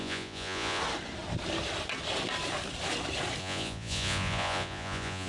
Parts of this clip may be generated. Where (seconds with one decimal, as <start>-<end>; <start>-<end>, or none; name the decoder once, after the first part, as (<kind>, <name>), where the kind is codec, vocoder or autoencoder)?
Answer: 0.0-0.8 (vocoder, Vocos); 3.4-5.3